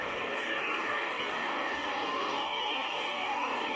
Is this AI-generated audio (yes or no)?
yes